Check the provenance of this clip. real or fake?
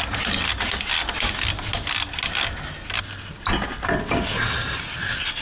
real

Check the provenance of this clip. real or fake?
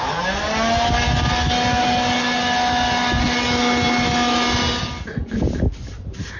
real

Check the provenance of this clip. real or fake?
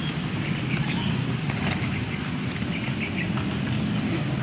real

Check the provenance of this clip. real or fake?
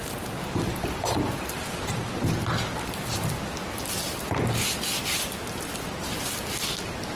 real